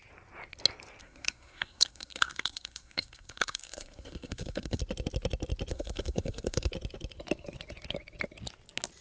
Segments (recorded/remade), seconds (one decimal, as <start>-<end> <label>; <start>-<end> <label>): 0.0-1.0 recorded; 1.0-4.8 remade; 4.8-5.7 recorded; 5.7-6.7 remade; 6.7-9.0 recorded